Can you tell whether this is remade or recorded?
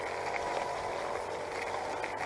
recorded